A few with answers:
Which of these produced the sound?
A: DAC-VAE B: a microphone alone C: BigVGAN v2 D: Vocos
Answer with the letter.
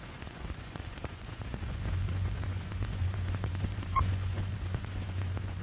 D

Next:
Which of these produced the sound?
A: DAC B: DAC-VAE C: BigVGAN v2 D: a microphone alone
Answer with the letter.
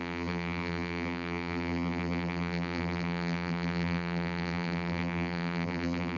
C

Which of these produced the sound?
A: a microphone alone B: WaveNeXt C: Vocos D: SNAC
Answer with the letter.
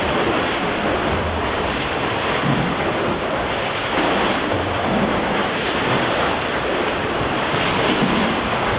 A